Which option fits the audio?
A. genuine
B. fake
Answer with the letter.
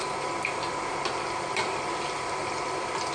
A